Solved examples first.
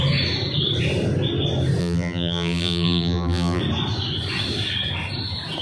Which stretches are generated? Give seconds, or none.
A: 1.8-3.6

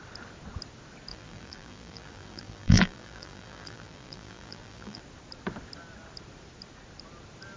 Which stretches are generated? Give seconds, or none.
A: 1.1-5.0

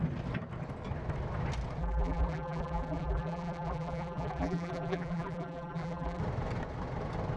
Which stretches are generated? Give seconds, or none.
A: 1.8-6.2

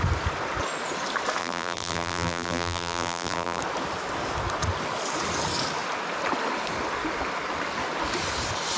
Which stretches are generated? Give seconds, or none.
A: 1.4-3.6

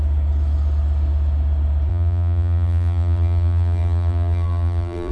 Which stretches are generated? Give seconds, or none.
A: 1.9-5.1

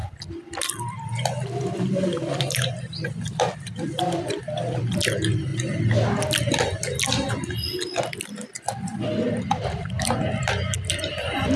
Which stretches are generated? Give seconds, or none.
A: 0.0-5.5; 8.2-11.6